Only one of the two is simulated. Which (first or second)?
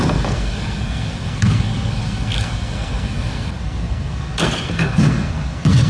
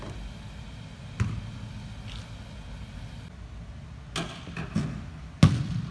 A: first